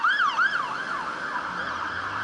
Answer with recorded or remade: recorded